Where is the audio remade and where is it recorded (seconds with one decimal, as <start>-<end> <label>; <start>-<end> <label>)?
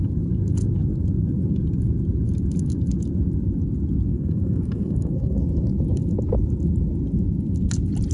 0.0-4.1 recorded; 4.1-5.4 remade; 5.4-8.1 recorded